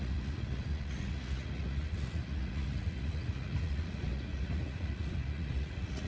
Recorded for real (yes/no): no